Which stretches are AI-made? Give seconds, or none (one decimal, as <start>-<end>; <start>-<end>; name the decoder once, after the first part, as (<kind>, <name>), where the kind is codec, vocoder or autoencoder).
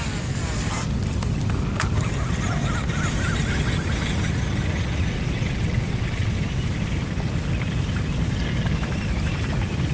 5.1-6.3 (vocoder, WaveNeXt)